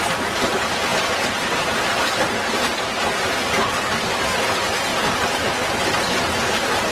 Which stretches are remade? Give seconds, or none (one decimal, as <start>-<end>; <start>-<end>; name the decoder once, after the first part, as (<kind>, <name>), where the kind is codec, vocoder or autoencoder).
0.9-2.0 (vocoder, BigVGAN v2); 4.9-5.5